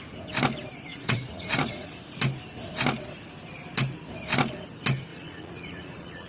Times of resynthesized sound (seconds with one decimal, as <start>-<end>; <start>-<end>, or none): 0.9-2.0; 5.1-6.3